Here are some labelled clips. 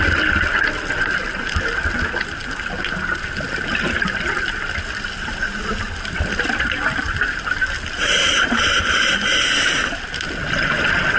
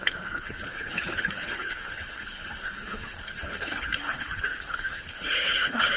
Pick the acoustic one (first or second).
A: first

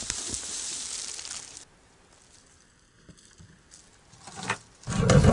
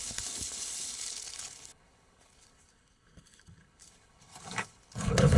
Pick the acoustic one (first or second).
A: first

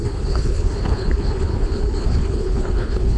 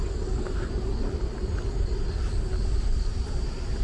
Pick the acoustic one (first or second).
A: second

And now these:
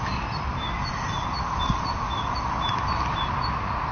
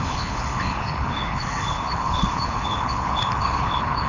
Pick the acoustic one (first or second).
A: first